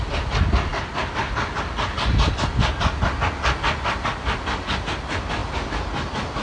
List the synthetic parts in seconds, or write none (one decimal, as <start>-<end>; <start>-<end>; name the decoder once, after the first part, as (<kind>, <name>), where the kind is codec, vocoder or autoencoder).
none